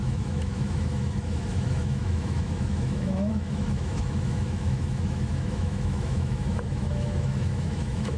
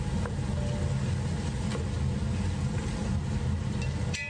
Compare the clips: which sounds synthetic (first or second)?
first